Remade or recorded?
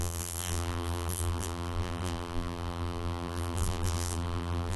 remade